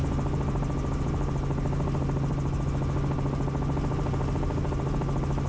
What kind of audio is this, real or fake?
real